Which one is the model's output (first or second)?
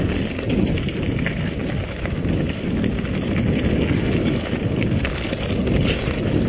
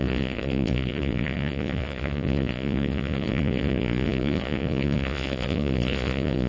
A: second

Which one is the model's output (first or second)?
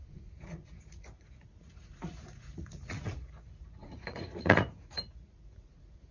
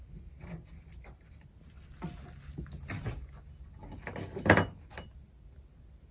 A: first